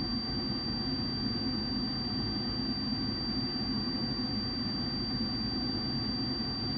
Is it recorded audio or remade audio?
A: recorded